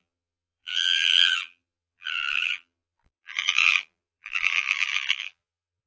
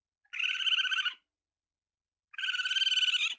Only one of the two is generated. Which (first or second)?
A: first